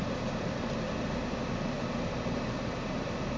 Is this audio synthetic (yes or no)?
no